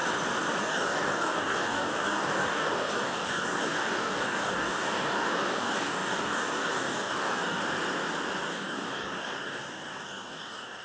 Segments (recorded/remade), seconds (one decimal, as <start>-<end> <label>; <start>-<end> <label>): 0.0-0.6 recorded; 0.6-7.6 remade; 7.6-8.5 recorded; 8.5-10.8 remade